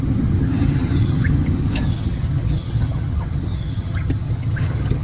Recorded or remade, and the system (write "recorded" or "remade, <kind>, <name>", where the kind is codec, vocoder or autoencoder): remade, vocoder, HiFi-GAN